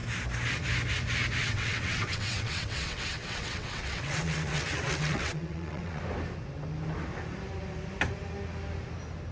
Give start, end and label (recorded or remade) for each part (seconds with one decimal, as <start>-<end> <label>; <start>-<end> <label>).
0.0-1.4 recorded; 1.4-6.0 remade; 6.0-9.3 recorded